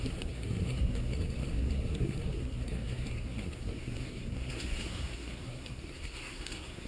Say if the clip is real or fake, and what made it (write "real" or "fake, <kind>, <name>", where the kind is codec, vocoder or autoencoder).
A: fake, codec, SNAC